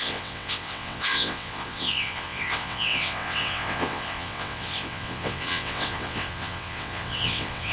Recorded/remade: remade